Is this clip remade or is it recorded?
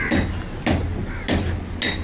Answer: recorded